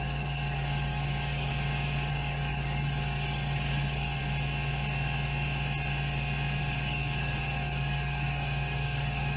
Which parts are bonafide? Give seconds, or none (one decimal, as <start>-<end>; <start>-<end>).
1.5-2.1; 4.2-6.6